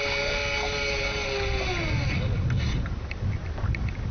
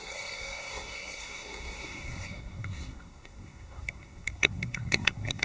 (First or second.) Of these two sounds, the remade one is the second